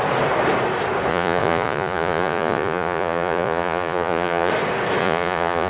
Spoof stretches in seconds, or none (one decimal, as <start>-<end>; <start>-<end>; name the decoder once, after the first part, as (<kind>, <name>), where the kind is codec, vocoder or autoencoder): 1.1-4.5 (vocoder, Vocos); 5.0-5.7

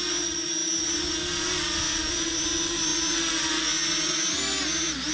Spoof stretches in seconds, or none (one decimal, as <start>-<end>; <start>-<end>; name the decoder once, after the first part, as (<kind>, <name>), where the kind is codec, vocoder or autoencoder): none

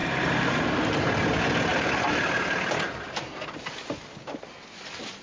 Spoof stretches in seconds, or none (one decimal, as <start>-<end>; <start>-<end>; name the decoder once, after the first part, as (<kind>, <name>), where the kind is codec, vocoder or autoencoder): none

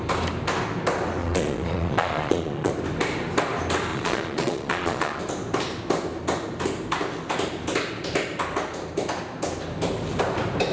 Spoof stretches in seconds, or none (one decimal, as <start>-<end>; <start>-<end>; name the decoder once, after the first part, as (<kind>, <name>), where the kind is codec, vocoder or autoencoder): 1.2-2.7 (vocoder, Vocos); 3.9-5.2

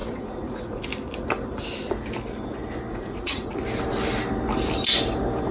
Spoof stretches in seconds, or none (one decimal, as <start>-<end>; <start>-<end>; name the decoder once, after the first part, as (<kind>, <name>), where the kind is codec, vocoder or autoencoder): 0.0-0.8 (vocoder, Vocos); 2.9-3.5